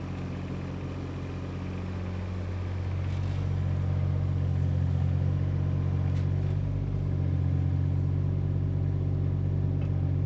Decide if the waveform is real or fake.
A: real